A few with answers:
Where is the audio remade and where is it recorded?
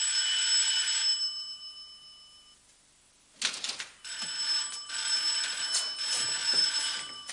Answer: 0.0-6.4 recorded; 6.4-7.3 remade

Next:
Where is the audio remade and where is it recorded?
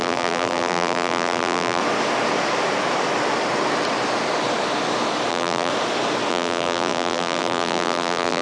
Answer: 0.0-1.8 remade; 1.8-5.3 recorded; 5.3-5.7 remade; 5.7-6.3 recorded; 6.3-8.4 remade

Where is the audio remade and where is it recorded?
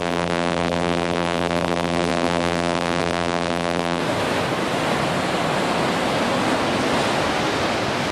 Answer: 0.0-4.0 remade; 4.0-8.1 recorded